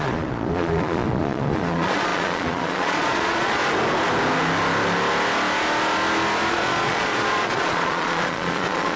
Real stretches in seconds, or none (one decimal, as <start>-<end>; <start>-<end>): 3.6-6.5